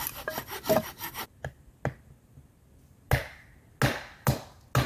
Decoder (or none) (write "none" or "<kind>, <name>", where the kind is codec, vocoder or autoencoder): none